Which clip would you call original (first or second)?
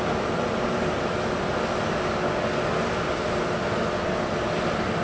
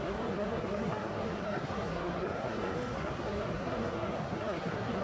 first